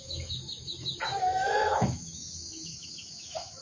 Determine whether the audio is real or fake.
fake